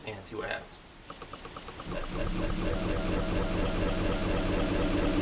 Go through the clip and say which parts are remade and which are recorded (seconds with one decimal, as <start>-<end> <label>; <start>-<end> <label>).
0.0-5.2 recorded